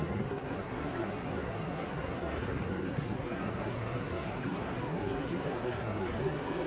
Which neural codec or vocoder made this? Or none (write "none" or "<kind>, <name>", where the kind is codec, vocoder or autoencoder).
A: codec, SNAC